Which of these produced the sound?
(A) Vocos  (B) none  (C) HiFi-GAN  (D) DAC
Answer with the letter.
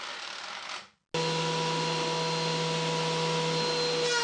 B